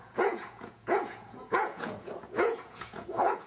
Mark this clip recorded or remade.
remade